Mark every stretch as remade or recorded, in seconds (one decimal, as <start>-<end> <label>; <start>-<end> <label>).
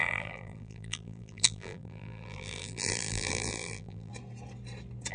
0.0-4.1 remade; 4.1-5.1 recorded